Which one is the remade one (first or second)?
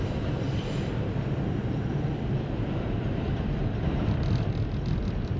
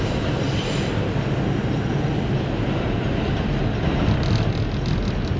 first